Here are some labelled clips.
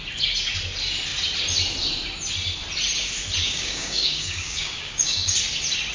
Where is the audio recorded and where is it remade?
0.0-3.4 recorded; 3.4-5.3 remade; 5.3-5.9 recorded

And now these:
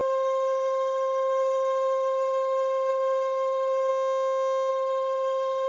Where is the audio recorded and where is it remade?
0.0-3.9 remade; 3.9-4.7 recorded; 4.7-5.7 remade

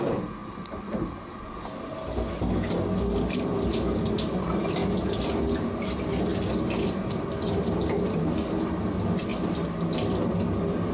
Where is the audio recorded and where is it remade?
0.0-10.9 recorded